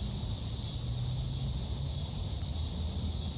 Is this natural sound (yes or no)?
yes